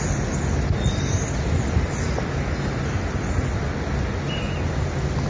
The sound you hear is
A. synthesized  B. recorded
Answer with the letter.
B